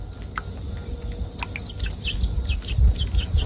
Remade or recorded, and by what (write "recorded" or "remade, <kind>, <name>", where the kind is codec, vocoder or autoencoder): recorded